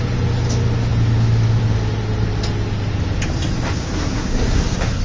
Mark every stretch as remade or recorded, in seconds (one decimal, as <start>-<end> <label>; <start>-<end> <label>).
0.0-3.8 recorded; 3.8-5.0 remade